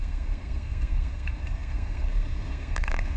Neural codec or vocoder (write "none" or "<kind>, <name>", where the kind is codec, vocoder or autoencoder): codec, SNAC